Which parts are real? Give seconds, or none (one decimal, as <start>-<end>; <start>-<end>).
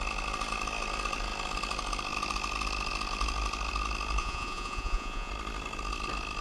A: 0.0-4.2; 5.3-6.4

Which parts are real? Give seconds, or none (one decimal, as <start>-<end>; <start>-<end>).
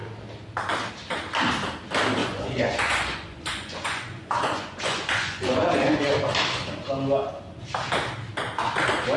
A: 0.0-2.2; 6.2-9.2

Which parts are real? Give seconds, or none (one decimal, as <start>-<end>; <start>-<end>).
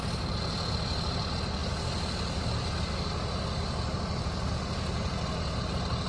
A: 0.0-6.1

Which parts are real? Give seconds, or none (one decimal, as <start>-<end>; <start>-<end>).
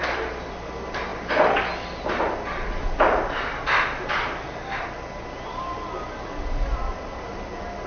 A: 0.0-7.9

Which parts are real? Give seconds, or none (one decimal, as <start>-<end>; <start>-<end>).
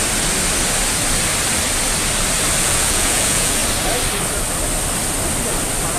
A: 0.0-2.6; 3.6-6.0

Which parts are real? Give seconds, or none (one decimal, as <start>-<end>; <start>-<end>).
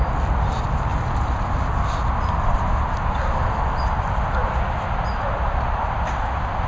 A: 0.0-6.7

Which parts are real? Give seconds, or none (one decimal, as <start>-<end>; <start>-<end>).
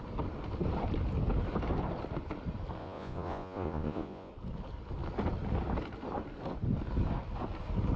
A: 0.0-2.8; 4.3-8.0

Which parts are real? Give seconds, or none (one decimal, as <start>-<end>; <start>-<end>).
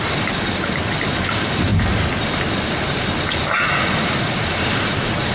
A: 0.0-5.3